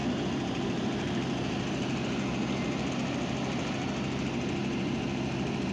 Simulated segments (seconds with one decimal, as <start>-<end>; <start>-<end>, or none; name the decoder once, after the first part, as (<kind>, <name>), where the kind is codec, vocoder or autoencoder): 0.0-2.9 (vocoder, BigVGAN v2); 4.6-5.7